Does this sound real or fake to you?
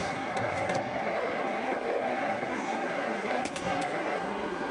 fake